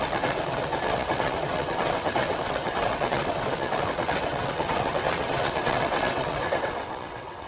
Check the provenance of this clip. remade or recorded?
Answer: remade